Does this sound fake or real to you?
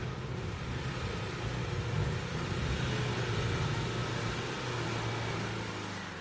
real